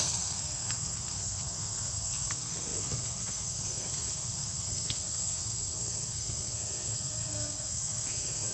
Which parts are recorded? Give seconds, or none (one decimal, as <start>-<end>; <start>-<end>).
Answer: none